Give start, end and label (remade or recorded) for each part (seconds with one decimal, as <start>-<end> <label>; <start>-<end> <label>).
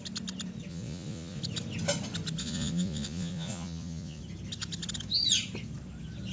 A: 0.0-0.7 recorded; 0.7-1.4 remade; 1.4-2.4 recorded; 2.4-4.2 remade; 4.2-6.3 recorded